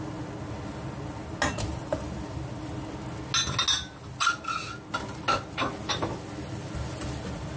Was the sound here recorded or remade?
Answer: recorded